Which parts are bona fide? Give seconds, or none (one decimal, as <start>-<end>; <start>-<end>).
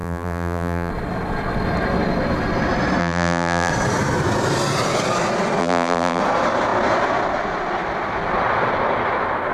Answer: 0.9-3.0; 3.7-5.6; 6.2-9.5